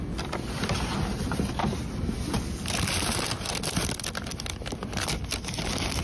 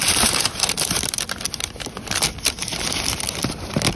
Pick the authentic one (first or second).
first